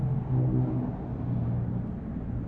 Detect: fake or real real